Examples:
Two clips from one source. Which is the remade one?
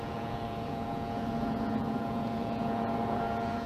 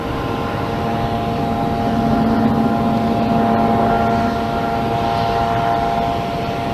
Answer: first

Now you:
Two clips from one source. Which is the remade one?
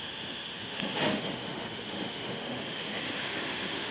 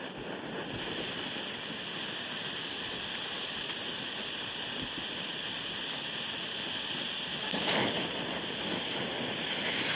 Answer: first